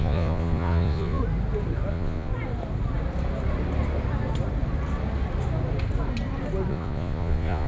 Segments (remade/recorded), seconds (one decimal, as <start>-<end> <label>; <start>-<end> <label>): 0.0-1.2 remade; 1.2-1.9 recorded; 1.9-2.3 remade; 2.3-6.7 recorded; 6.7-7.7 remade